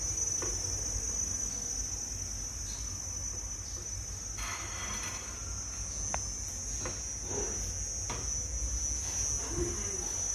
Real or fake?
real